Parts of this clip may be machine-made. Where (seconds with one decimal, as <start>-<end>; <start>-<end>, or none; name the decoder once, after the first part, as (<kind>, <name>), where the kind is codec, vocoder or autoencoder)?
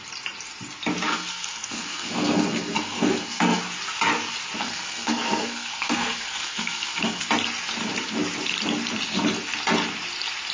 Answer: 1.1-3.6 (codec, SNAC); 4.6-7.3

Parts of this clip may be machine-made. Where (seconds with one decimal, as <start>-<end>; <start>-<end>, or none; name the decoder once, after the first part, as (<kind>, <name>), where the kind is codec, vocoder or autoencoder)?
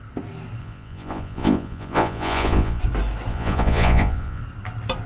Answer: 0.6-2.8 (vocoder, Vocos); 3.3-4.4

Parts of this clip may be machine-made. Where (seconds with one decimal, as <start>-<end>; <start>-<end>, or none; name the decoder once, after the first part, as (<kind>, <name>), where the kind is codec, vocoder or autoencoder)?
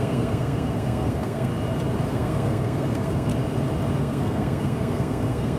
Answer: 0.0-1.5 (codec, SNAC); 2.1-3.3; 4.0-5.6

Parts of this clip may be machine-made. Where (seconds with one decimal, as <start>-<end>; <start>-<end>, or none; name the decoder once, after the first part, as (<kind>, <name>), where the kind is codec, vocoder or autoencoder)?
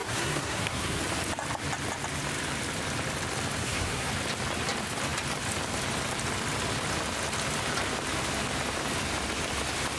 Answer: 0.0-1.0 (codec, SNAC); 3.6-4.1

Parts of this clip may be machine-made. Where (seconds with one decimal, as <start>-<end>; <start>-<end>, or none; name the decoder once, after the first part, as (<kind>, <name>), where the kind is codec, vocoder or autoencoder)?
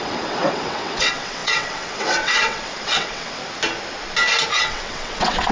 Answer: 0.0-3.4 (vocoder, WaveNeXt); 4.6-5.5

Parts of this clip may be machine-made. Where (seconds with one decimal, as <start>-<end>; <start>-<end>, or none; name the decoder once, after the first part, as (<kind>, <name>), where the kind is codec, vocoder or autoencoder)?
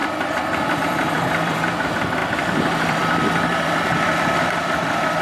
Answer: 0.0-5.2 (vocoder, BigVGAN v2)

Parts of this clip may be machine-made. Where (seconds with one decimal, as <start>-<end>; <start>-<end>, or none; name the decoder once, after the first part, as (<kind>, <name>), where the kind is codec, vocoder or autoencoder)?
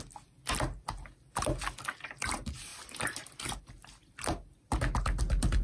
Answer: none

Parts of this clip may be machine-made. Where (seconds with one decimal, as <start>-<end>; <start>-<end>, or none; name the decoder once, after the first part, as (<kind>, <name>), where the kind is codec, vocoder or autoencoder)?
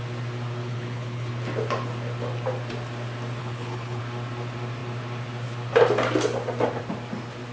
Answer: 0.6-1.3 (codec, HILCodec); 3.4-4.0